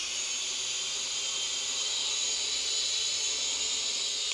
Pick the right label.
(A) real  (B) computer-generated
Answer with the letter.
A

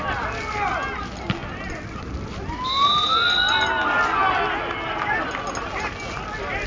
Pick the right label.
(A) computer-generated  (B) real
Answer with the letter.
B